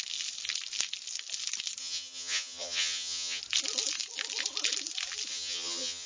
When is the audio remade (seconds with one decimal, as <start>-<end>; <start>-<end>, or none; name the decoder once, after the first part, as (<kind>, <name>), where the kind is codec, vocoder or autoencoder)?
1.8-3.4 (vocoder, HiFi-GAN); 5.3-6.1